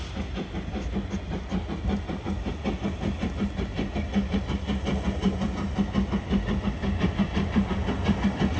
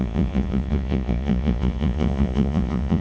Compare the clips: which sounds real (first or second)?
first